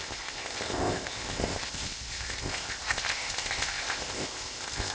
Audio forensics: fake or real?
fake